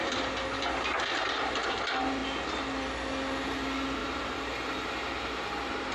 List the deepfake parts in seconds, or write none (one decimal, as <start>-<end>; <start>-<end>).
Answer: 0.0-1.7; 4.0-5.9